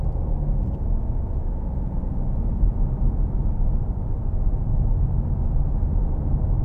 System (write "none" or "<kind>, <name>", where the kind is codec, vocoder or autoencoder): none